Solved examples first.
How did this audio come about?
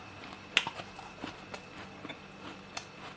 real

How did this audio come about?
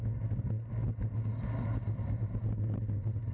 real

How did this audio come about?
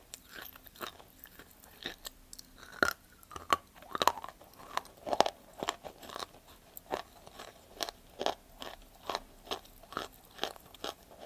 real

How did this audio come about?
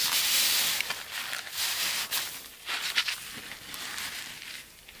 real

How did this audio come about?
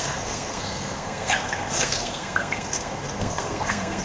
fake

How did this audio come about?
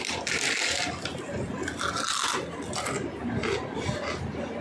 real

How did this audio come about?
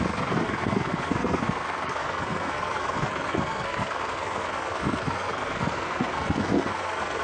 fake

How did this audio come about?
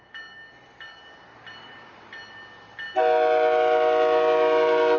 real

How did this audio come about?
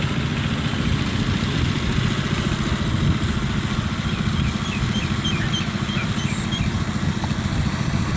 real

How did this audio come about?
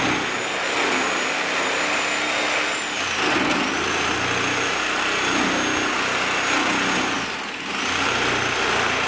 real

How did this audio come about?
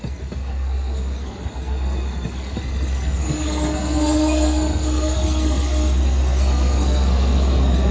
fake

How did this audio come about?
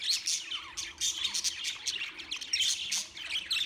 real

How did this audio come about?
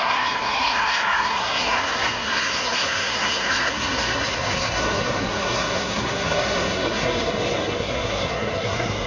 fake